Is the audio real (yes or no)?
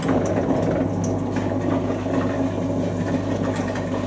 yes